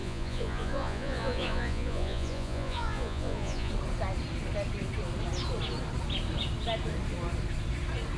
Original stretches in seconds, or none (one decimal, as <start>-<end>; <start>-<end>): 3.7-8.2